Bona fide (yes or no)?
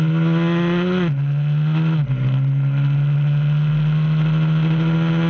yes